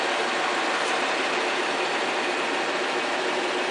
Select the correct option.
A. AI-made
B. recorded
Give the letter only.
B